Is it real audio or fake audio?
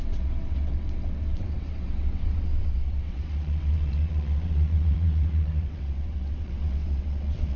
fake